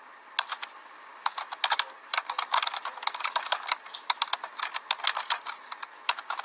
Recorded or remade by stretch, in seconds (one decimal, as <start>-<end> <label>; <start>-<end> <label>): 0.0-6.4 recorded